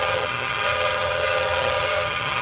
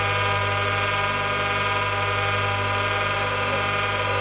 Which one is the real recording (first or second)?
second